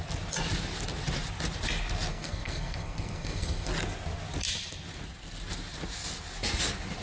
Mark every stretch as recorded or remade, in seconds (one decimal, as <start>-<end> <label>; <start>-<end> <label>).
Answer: 0.0-2.1 recorded; 2.1-3.7 remade; 3.7-7.0 recorded